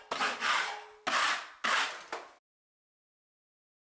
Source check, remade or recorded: recorded